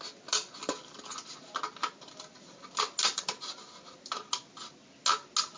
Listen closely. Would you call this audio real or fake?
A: real